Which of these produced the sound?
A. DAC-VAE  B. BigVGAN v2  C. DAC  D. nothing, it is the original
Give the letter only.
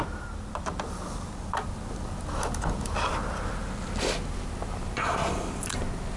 D